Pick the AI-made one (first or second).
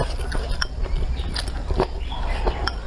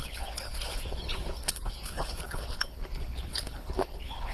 second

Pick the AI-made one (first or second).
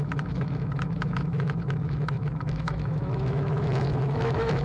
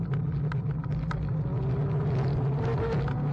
first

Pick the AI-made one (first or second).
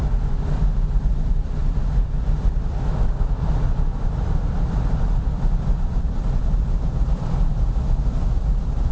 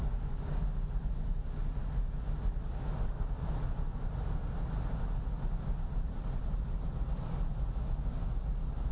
first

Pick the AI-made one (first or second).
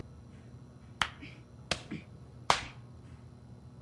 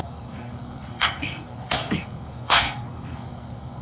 second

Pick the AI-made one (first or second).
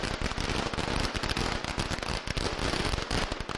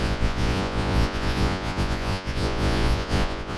second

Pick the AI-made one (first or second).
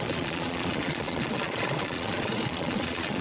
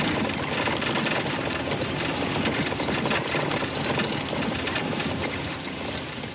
first